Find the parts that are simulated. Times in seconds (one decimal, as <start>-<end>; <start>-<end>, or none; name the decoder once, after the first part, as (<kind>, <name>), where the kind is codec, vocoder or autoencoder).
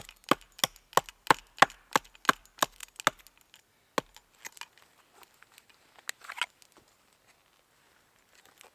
none